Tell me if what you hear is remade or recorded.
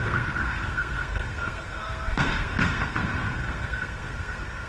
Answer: remade